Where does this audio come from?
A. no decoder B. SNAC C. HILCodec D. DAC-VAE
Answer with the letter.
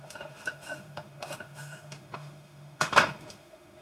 D